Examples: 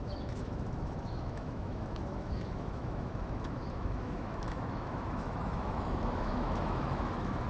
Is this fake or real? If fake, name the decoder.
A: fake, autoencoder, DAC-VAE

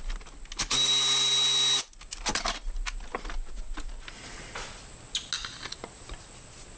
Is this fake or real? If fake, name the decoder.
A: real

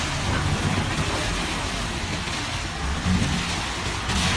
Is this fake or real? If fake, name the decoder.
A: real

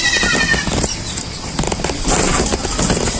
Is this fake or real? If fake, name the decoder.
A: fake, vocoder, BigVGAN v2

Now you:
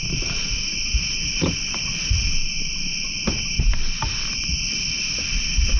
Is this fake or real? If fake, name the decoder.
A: real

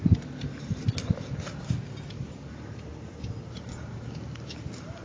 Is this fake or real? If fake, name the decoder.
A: real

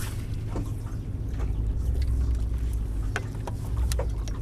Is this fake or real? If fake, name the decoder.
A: real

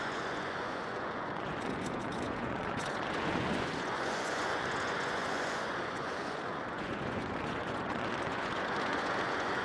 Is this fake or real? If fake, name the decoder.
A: fake, vocoder, Vocos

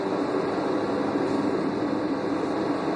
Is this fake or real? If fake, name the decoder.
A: real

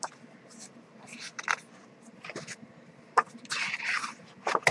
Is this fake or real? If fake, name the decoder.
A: real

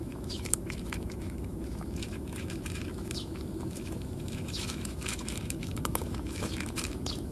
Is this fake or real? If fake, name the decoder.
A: fake, autoencoder, DAC-VAE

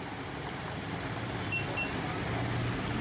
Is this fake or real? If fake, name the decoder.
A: real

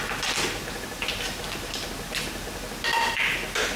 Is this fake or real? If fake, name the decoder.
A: real